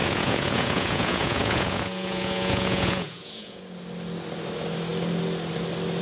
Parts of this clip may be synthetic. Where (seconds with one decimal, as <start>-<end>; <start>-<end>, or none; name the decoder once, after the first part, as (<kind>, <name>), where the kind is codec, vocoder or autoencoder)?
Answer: 0.0-3.6 (vocoder, Vocos)